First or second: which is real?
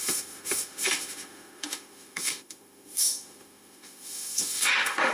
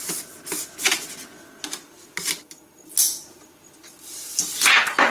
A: second